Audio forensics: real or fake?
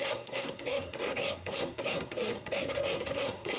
fake